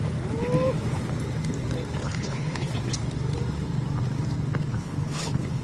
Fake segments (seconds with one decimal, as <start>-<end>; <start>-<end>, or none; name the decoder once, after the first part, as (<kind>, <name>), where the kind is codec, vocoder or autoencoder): 2.0-2.7 (codec, HILCodec); 4.7-5.6